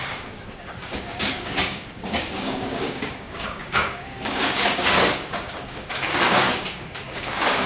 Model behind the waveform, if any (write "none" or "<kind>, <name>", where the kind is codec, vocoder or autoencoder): codec, DAC